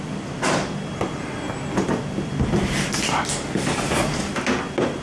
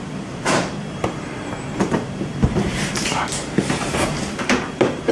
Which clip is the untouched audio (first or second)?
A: first